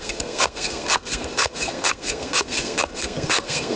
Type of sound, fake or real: fake